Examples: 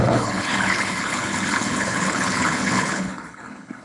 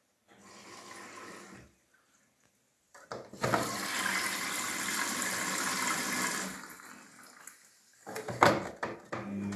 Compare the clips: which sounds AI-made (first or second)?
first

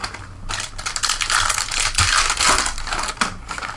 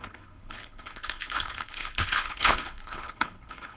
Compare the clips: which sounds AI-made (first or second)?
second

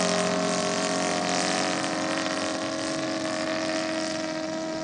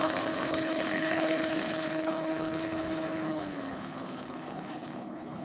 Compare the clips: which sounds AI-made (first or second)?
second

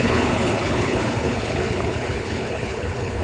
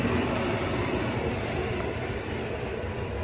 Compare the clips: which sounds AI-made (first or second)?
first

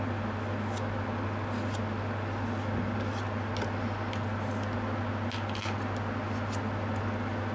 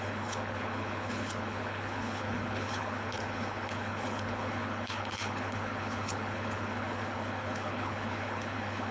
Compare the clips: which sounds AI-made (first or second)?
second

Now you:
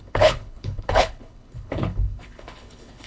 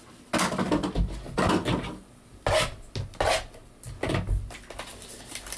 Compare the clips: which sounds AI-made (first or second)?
first